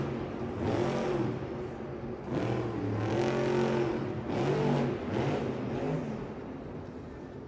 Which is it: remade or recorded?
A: recorded